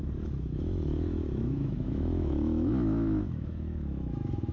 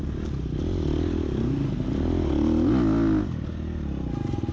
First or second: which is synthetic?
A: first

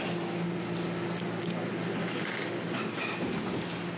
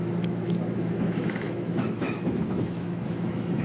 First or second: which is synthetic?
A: second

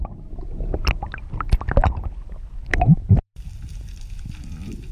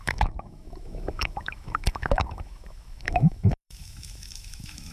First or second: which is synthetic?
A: second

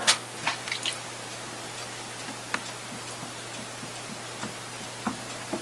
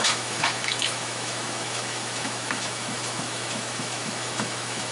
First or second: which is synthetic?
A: second